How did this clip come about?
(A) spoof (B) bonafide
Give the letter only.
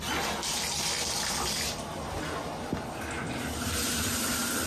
B